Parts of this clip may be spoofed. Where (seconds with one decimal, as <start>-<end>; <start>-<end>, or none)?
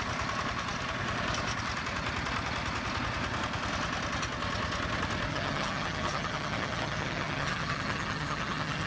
5.3-8.9